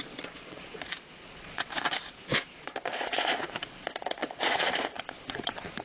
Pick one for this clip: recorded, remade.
remade